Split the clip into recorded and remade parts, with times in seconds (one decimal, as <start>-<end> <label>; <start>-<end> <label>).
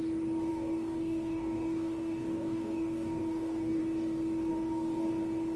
0.0-0.5 recorded; 0.5-3.8 remade; 3.8-4.5 recorded; 4.5-5.1 remade; 5.1-5.6 recorded